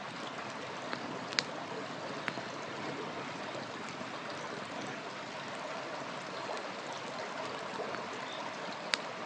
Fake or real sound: real